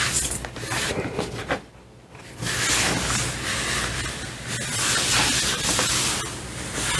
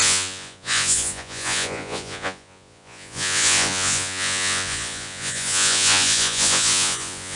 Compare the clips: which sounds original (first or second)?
first